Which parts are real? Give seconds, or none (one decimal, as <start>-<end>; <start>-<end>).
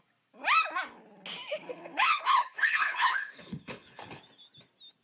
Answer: 0.0-1.7; 4.2-5.0